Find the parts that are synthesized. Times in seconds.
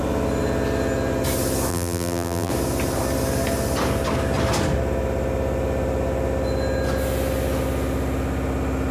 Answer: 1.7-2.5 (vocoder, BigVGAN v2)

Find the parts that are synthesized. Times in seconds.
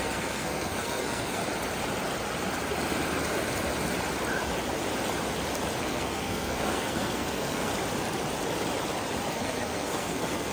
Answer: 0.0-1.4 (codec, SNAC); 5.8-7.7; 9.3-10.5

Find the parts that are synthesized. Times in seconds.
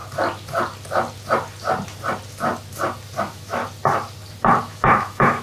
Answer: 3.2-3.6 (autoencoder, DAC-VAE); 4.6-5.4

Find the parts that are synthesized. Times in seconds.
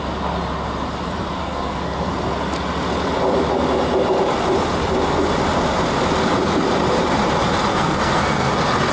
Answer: 1.4-2.1 (codec, SNAC); 7.7-8.5